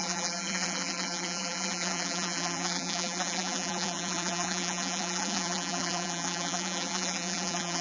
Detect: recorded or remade remade